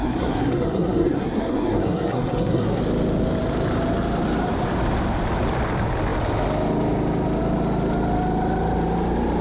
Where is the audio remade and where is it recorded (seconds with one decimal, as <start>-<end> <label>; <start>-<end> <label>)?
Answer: 0.0-2.8 remade; 2.8-9.4 recorded